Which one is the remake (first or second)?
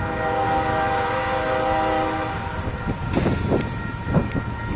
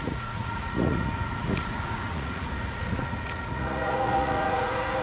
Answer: second